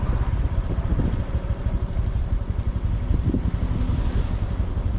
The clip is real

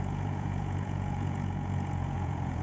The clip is fake